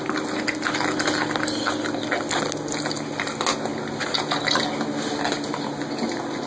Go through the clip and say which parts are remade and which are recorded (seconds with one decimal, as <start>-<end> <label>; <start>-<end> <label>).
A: 0.0-6.5 recorded